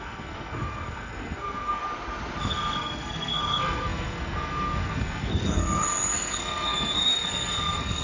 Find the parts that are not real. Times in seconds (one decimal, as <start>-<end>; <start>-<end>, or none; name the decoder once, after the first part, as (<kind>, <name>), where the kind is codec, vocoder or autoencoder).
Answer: 0.0-1.8 (codec, SNAC); 2.4-8.0

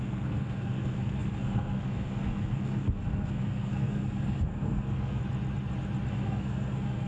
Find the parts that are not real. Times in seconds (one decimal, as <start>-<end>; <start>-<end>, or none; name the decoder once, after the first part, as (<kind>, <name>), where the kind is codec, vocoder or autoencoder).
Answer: 0.0-5.2 (codec, SNAC); 6.1-7.1

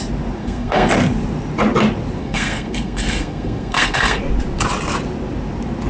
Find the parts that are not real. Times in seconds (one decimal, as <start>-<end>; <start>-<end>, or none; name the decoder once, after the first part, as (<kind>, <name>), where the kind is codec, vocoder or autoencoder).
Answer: 0.4-0.9 (codec, SNAC); 2.2-4.2

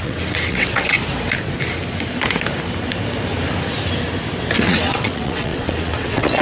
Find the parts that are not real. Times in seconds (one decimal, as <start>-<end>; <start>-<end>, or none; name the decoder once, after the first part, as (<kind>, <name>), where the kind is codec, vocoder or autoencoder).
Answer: 0.0-1.0 (vocoder, WaveNeXt); 4.6-6.4